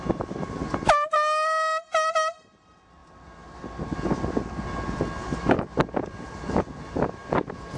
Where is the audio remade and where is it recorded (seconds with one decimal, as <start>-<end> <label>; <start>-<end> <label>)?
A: 0.0-5.2 recorded; 5.2-6.3 remade; 6.3-7.2 recorded; 7.2-7.8 remade